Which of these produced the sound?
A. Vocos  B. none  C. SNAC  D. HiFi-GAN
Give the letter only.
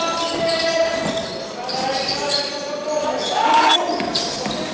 B